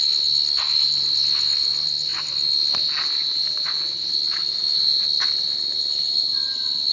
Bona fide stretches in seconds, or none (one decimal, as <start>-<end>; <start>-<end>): 0.0-6.9